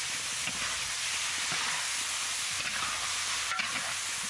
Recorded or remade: recorded